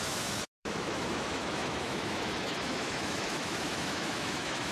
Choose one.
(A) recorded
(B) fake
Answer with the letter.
B